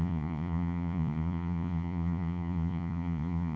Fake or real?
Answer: fake